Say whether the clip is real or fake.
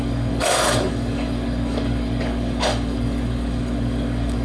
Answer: fake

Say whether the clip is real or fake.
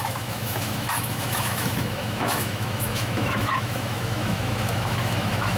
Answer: fake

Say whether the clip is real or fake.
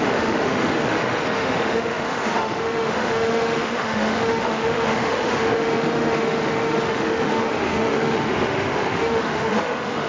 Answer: fake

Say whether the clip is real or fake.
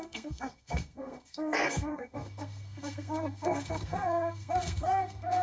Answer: fake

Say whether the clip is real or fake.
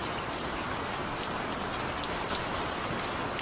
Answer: real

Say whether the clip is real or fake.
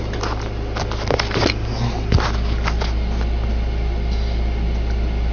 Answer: real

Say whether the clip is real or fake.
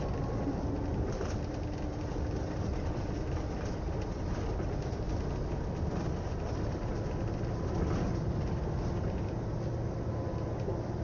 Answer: real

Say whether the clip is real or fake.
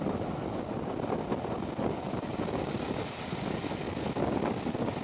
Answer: real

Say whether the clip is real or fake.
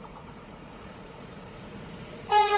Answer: fake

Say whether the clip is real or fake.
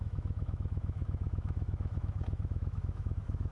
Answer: fake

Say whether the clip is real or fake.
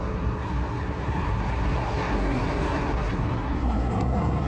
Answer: fake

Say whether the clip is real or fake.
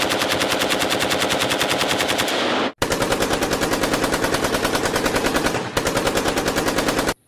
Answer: real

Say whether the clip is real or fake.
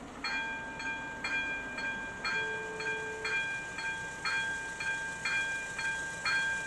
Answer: real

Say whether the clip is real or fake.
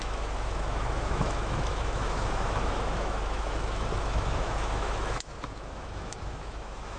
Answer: fake